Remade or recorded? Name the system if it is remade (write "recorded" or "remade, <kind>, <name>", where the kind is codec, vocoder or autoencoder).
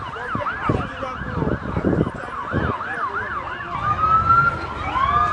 recorded